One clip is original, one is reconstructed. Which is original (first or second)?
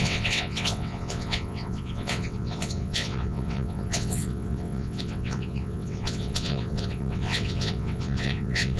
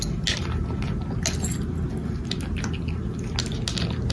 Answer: second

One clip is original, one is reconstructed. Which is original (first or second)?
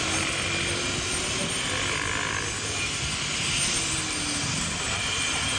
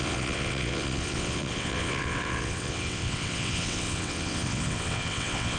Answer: first